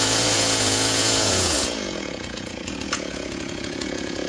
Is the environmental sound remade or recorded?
remade